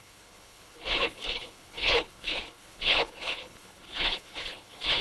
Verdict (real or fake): fake